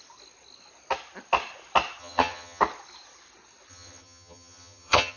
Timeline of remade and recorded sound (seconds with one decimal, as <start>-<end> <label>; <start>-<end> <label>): 0.0-2.0 recorded; 2.0-2.6 remade; 2.6-3.7 recorded; 3.7-5.2 remade

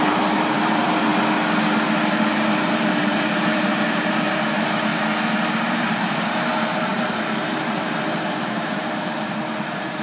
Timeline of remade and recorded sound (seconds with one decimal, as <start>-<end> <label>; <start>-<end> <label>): 0.0-1.1 remade; 1.1-2.3 recorded; 2.3-4.9 remade; 4.9-5.5 recorded; 5.5-10.0 remade

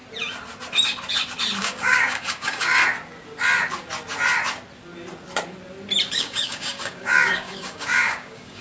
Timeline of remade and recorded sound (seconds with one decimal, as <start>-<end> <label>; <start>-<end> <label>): 0.0-1.6 recorded; 1.6-2.8 remade; 2.8-6.1 recorded; 6.1-8.6 remade

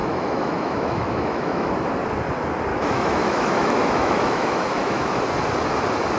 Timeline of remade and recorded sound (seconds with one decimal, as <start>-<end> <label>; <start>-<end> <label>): 0.0-1.7 remade; 1.7-2.7 recorded; 2.7-5.1 remade; 5.1-6.2 recorded

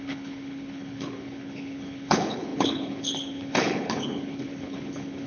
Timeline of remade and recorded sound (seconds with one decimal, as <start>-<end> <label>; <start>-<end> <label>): 0.0-5.3 remade